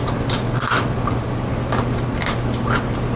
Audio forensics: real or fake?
real